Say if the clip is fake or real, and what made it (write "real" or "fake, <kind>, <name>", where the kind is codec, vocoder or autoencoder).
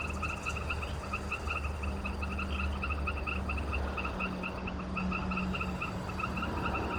real